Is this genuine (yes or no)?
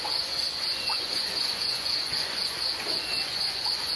no